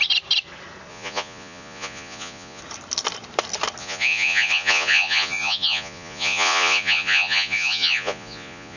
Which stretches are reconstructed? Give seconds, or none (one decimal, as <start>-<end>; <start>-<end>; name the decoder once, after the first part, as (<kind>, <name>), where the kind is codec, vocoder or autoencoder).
0.9-2.6 (vocoder, Vocos); 3.8-8.8